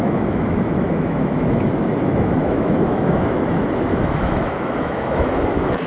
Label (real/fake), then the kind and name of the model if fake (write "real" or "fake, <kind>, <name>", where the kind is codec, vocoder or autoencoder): fake, autoencoder, DAC-VAE